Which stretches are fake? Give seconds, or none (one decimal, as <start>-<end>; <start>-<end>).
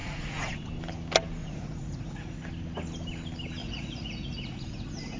0.0-0.7; 1.4-2.4; 3.6-5.2